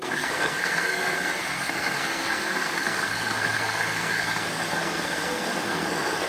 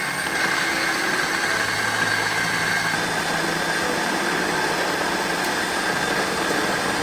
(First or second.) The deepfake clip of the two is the first